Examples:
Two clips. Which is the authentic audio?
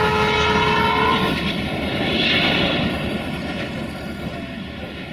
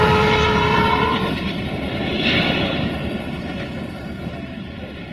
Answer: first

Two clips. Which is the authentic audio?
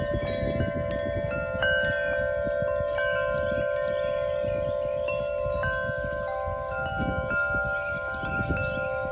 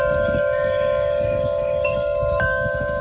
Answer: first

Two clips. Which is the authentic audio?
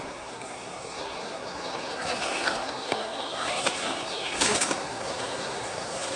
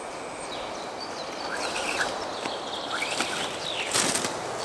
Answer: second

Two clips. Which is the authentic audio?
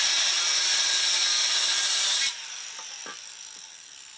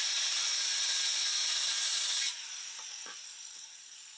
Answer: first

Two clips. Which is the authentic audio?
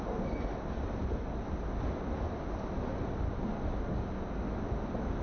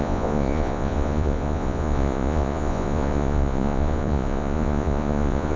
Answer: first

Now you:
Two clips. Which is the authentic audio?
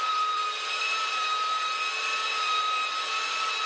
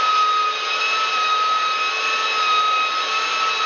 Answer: second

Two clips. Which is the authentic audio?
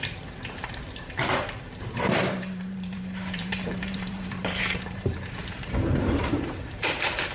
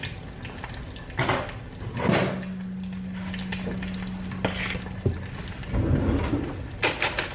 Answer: second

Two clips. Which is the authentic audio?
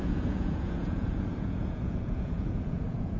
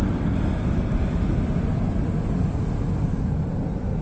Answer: second